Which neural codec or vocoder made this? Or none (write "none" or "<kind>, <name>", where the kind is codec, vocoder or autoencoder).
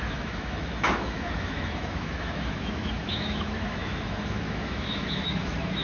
autoencoder, DAC-VAE